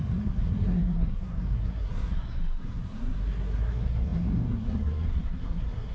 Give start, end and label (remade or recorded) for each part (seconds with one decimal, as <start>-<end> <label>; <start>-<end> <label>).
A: 0.0-5.9 remade